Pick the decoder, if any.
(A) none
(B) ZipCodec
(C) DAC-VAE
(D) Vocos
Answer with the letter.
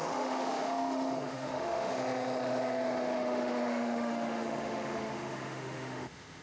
C